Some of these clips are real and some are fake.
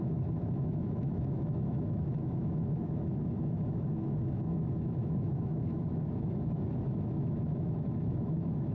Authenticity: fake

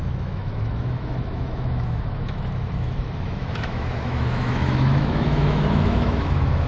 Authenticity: fake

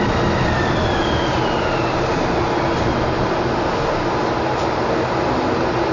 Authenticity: real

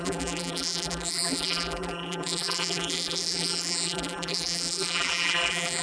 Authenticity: fake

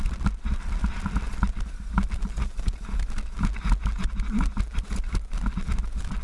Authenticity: real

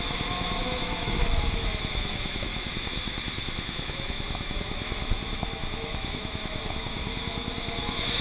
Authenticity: fake